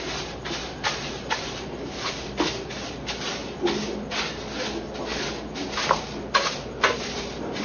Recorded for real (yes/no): yes